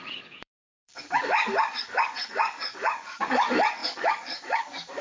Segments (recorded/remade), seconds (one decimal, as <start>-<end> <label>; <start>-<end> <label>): 0.0-5.0 remade